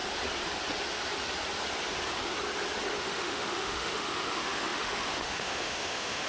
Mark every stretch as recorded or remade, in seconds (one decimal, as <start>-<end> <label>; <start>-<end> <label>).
0.0-3.0 recorded; 3.0-6.3 remade